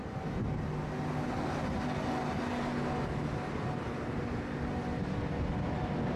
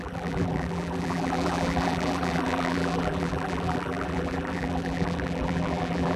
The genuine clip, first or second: first